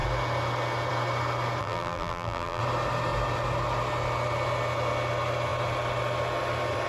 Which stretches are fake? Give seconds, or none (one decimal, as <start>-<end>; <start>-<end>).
1.6-2.6